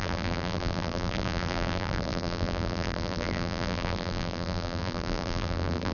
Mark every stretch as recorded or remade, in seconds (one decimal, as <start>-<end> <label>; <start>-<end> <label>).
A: 0.0-5.9 remade